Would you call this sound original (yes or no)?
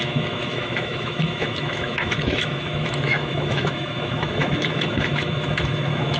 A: no